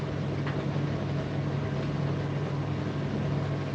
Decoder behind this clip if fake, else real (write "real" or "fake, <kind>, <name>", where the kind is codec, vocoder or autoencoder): real